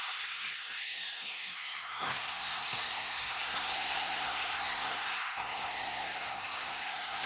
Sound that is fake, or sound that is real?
fake